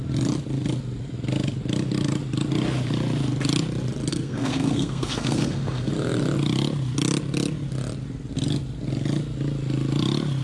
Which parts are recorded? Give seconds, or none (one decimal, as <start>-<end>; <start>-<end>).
0.0-4.1; 5.9-10.4